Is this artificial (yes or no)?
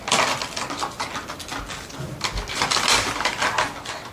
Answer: no